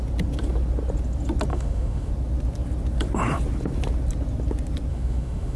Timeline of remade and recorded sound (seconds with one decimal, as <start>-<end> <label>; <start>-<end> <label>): 0.0-1.5 recorded; 1.5-2.1 remade; 2.1-4.9 recorded; 4.9-5.6 remade